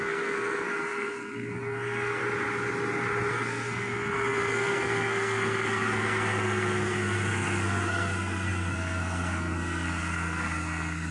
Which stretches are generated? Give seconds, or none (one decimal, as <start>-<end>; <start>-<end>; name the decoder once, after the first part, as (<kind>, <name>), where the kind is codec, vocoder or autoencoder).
0.0-2.2 (codec, SNAC); 3.3-11.1